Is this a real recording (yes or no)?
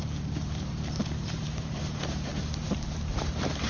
no